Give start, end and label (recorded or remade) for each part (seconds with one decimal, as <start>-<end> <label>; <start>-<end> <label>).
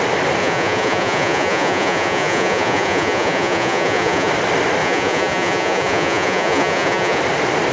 0.0-0.4 recorded; 0.4-4.3 remade; 4.3-4.8 recorded; 4.8-7.2 remade; 7.2-7.7 recorded